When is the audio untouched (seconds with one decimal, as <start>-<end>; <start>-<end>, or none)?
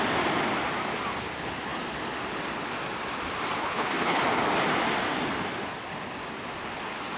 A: 0.0-3.6; 4.2-7.2